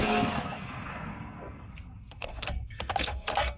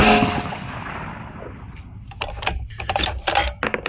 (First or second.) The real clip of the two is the second